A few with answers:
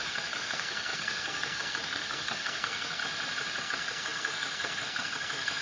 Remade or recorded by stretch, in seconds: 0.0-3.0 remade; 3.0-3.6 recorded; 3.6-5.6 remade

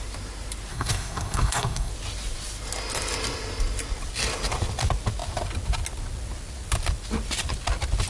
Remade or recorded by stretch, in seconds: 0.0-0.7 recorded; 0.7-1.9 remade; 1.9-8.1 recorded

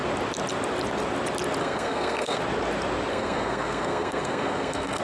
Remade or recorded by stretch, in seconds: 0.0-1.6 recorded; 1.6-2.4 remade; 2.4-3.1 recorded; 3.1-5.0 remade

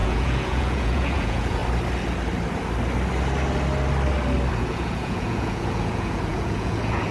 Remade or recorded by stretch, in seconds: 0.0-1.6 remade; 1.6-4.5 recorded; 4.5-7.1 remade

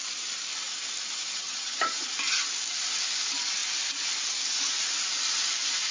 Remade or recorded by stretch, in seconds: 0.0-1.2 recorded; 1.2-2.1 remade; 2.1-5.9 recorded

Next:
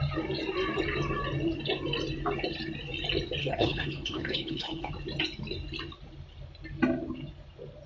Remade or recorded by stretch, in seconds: 0.0-3.4 recorded; 3.4-4.9 remade; 4.9-7.9 recorded